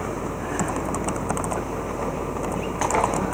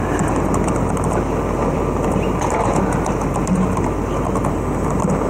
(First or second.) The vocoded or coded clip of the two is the first